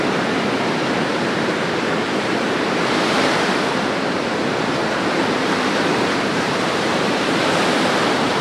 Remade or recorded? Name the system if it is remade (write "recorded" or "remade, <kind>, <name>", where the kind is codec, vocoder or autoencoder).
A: remade, vocoder, BigVGAN v2